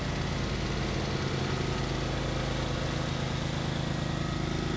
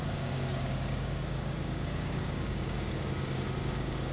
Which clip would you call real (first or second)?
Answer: first